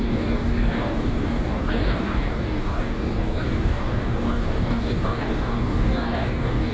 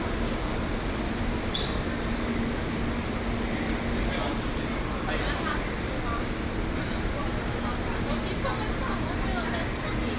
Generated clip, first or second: first